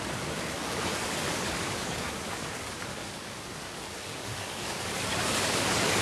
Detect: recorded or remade remade